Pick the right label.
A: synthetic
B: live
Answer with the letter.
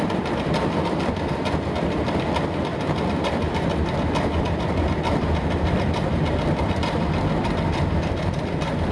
A